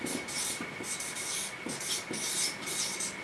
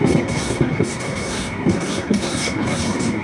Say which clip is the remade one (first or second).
second